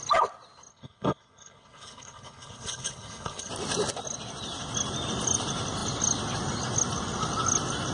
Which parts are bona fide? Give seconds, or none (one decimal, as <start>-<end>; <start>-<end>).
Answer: 0.0-0.7; 3.5-7.9